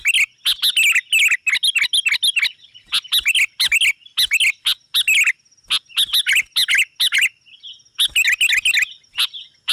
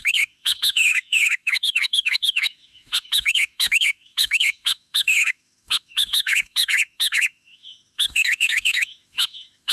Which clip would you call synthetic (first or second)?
second